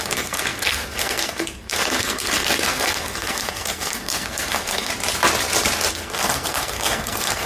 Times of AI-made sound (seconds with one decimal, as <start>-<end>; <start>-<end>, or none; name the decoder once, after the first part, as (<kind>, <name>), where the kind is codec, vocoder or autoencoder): 0.0-4.9 (codec, SNAC); 5.9-7.5